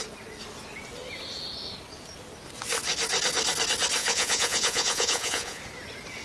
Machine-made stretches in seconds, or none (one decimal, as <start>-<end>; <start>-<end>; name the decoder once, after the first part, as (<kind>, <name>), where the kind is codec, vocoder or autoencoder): 4.0-5.6 (vocoder, Vocos)